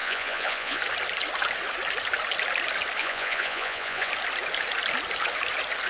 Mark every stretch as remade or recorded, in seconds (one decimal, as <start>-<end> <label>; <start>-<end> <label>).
0.0-0.8 remade; 0.8-3.0 recorded; 3.0-4.1 remade; 4.1-5.9 recorded